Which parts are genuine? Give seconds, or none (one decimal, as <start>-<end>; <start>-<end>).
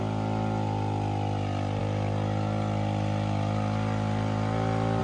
0.0-5.0